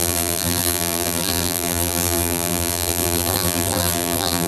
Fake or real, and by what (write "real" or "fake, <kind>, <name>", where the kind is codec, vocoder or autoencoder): fake, vocoder, BigVGAN v2